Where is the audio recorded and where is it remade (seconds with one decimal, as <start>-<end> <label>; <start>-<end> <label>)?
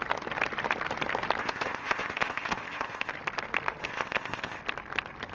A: 0.0-1.4 recorded; 1.4-3.1 remade; 3.1-3.8 recorded; 3.8-4.6 remade; 4.6-5.3 recorded